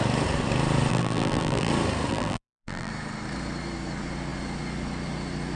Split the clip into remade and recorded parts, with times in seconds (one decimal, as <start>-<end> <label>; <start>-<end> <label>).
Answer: 0.0-0.9 recorded; 0.9-1.7 remade; 1.7-2.1 recorded; 2.1-2.9 remade; 2.9-5.6 recorded